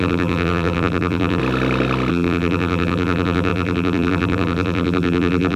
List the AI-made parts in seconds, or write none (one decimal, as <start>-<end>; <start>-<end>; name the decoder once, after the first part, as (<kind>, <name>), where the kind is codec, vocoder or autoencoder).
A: 0.0-1.4 (vocoder, BigVGAN v2); 2.1-5.6